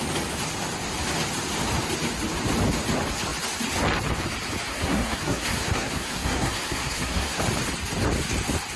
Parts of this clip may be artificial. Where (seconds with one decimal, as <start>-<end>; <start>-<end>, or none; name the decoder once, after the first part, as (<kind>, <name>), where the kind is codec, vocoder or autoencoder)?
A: 4.7-7.4 (codec, SNAC)